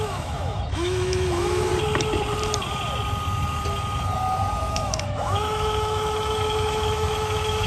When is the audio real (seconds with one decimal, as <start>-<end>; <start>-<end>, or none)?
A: 1.7-4.7